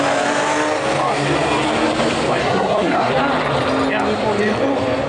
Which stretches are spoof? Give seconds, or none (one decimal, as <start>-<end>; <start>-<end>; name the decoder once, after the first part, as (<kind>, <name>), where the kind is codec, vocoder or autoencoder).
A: 2.4-3.1 (codec, SNAC)